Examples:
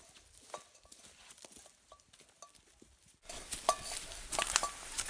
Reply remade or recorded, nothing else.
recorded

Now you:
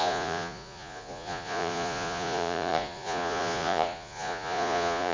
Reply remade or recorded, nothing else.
remade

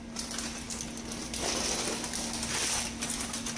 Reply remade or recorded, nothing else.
recorded